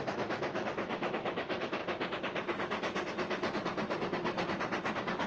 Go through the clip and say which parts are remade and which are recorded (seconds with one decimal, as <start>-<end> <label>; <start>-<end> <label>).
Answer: 0.0-1.8 remade; 1.8-5.3 recorded